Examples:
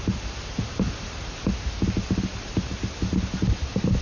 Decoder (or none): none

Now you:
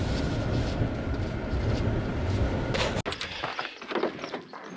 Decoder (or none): none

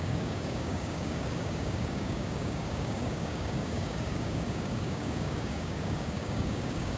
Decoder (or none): codec, DAC